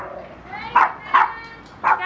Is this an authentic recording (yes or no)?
yes